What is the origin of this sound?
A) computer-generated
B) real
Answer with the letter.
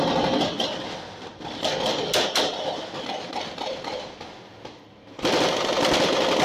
B